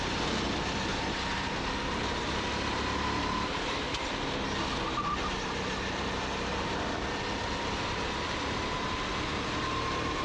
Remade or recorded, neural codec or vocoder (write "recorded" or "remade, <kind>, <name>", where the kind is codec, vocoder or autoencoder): recorded